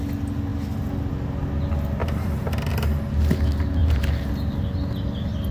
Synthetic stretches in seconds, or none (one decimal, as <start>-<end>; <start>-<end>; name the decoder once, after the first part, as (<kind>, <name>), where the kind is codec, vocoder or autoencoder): 2.0-2.7 (vocoder, BigVGAN v2); 3.8-4.3